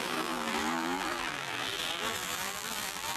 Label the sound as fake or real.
fake